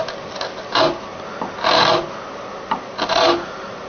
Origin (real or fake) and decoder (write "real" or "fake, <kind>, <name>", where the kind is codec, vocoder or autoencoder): real